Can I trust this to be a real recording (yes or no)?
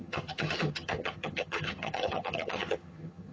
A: no